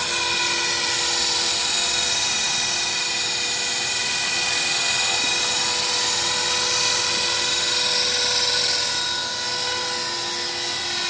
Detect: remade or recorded recorded